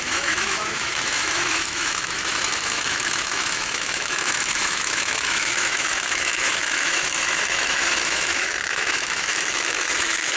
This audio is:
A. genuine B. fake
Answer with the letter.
B